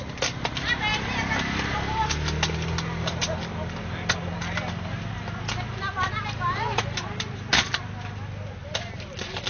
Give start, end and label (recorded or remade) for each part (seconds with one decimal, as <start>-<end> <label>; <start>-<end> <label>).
0.0-9.5 recorded